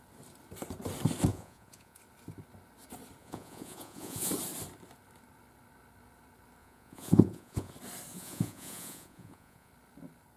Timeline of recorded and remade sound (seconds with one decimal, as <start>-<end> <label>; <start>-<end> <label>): 0.0-1.3 recorded; 1.3-2.0 remade; 2.0-3.2 recorded; 3.2-4.3 remade; 4.3-6.6 recorded; 6.6-7.7 remade; 7.7-8.1 recorded; 8.1-9.7 remade; 9.7-10.4 recorded